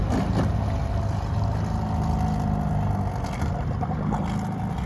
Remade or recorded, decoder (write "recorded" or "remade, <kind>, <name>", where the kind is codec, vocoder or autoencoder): recorded